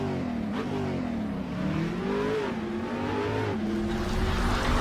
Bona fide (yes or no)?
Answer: yes